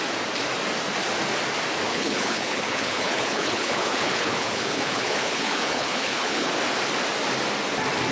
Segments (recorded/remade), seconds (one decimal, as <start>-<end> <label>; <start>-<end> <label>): 0.0-1.9 recorded; 1.9-6.5 remade; 6.5-8.1 recorded